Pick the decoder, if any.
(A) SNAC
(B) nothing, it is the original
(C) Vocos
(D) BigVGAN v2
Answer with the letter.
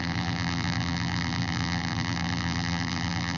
D